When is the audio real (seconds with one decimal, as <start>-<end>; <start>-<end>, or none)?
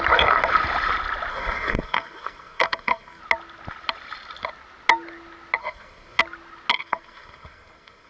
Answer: 0.0-1.3; 3.2-5.6; 6.2-6.7